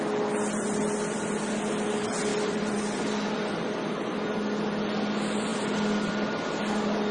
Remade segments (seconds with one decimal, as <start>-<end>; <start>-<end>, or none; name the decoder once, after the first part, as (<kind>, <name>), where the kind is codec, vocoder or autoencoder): 2.3-4.2 (vocoder, BigVGAN v2)